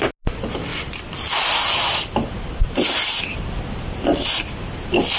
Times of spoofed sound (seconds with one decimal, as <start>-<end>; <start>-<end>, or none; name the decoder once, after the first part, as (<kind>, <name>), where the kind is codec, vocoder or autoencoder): none

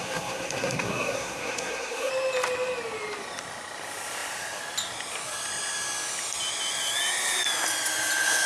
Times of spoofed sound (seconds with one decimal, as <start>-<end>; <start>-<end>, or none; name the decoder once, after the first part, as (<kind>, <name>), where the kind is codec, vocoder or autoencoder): 0.0-2.1 (codec, SNAC)

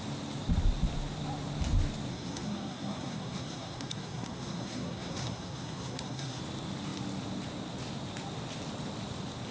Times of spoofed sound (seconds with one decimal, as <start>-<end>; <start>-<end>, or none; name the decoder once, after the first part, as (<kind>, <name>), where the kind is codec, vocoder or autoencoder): 2.1-6.4 (codec, SNAC)